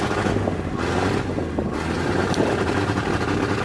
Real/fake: real